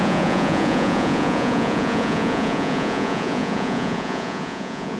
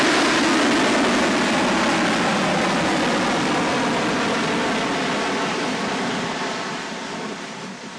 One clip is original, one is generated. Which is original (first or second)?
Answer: second